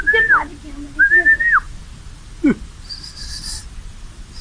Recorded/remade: recorded